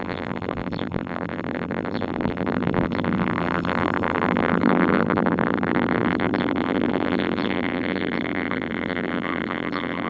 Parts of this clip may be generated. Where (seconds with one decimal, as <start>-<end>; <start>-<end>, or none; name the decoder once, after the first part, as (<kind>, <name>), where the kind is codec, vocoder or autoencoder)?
0.0-10.1 (vocoder, BigVGAN v2)